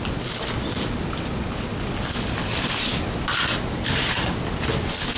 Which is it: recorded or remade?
recorded